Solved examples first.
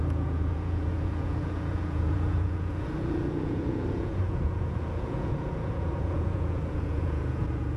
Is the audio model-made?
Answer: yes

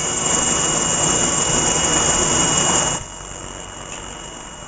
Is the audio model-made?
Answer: no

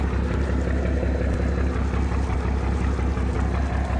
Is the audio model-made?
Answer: no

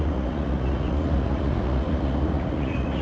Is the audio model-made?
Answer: yes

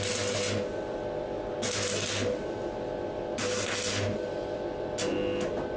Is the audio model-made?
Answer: no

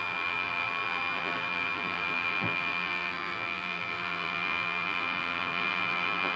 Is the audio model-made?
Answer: yes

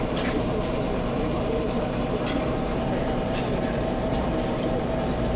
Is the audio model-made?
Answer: yes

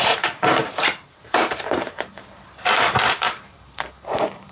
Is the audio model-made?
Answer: yes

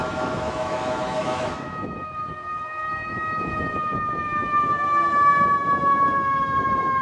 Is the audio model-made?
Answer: yes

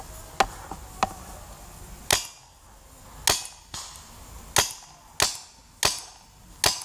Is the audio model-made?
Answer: no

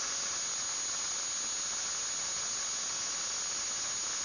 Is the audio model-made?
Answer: no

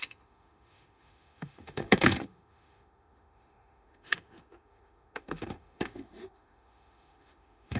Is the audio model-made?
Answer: yes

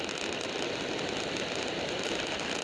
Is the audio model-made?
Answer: no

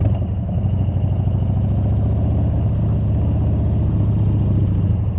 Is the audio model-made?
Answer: no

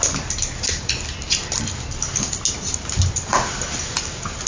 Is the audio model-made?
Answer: no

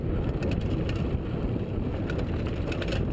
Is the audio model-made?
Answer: no